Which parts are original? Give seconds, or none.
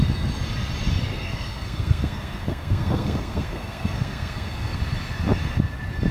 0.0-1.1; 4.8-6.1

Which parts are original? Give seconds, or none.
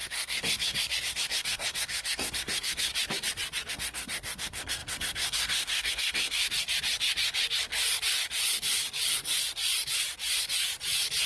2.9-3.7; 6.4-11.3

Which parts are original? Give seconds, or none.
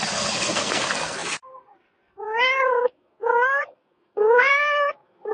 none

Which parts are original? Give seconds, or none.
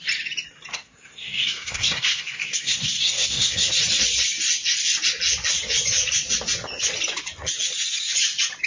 0.0-0.7; 3.7-8.7